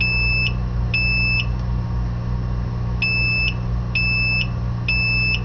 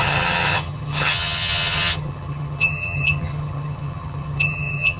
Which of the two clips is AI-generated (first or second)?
second